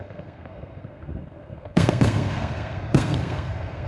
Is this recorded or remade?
remade